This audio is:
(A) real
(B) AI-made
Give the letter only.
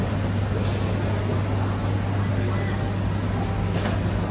A